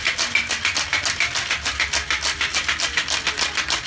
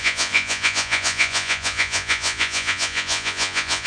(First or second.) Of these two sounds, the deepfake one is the second